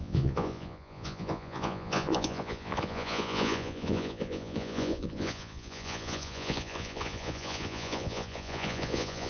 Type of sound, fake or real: fake